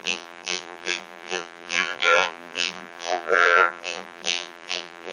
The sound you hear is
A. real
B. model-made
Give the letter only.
B